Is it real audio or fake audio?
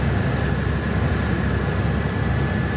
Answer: real